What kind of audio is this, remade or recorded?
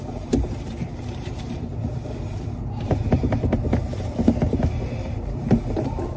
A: remade